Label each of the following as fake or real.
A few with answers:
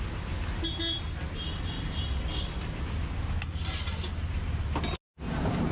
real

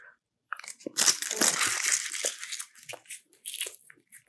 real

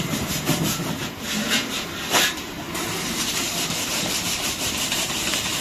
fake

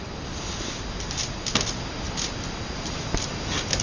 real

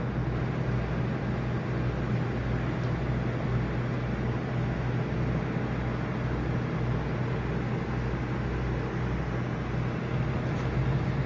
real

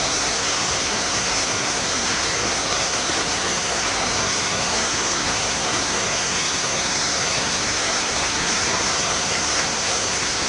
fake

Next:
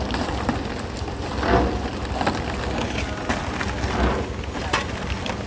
real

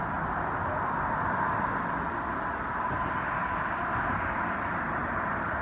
real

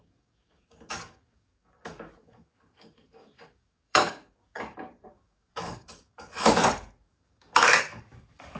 fake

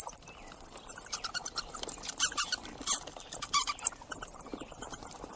real